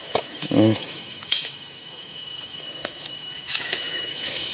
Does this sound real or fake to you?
fake